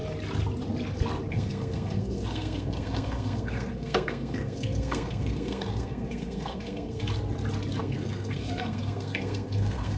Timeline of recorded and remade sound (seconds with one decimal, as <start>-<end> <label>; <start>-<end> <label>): 0.0-1.3 recorded; 1.3-7.0 remade; 7.0-7.8 recorded; 7.8-10.0 remade